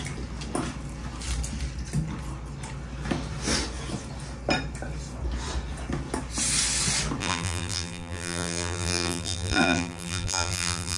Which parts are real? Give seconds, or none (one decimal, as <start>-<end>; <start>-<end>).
0.0-7.2